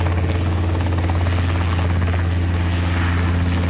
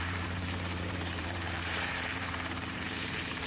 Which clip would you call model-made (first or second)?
second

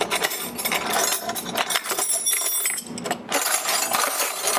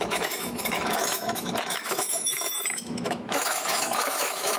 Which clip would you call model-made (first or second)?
second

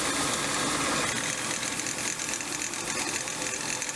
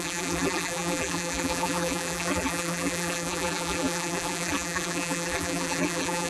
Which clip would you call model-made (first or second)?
second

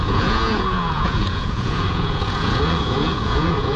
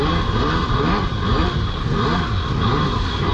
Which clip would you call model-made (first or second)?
first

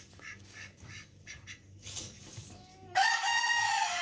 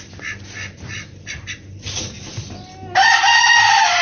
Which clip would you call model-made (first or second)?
first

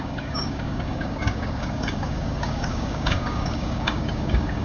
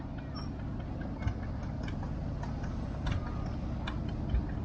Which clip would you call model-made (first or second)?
first